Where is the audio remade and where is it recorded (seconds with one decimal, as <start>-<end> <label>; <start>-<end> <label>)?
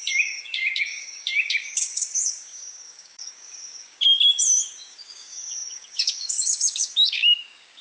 0.0-7.8 remade